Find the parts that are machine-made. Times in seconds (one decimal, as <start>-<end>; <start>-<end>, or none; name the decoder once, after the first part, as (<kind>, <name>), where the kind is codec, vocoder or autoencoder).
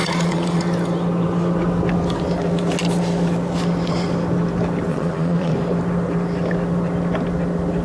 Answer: 0.0-0.6 (vocoder, Vocos); 4.9-5.5